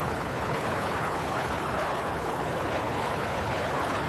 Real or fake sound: fake